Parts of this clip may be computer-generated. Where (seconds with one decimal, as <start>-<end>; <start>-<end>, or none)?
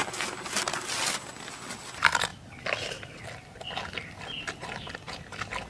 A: none